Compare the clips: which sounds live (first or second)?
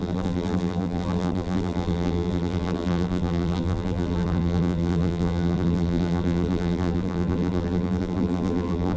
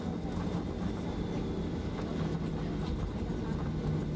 second